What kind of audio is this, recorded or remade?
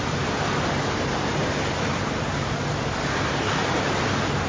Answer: remade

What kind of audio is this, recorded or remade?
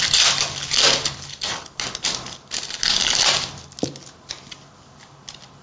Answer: recorded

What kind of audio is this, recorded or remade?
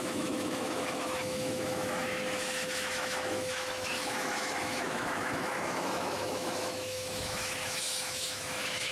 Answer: remade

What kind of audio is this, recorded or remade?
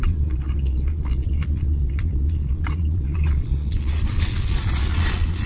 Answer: remade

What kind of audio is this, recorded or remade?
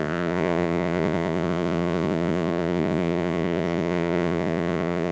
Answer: remade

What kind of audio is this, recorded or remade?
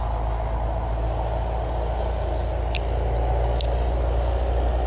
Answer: recorded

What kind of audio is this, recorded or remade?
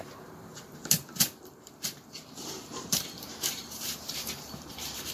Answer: remade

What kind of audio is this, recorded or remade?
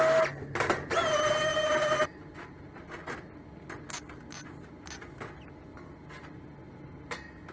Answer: recorded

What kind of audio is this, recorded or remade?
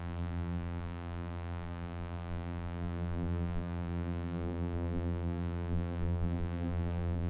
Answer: remade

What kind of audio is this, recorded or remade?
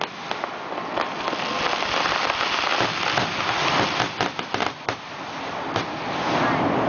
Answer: recorded